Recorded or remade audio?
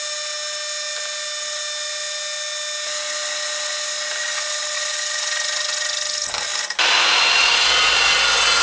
recorded